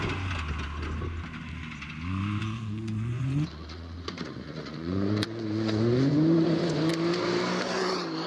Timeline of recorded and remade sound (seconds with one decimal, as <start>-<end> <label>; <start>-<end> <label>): 0.0-2.4 recorded; 2.4-6.9 remade; 6.9-8.3 recorded